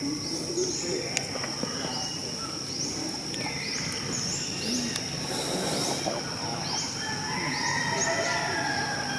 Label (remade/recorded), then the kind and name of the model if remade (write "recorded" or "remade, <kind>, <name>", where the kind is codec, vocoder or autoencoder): recorded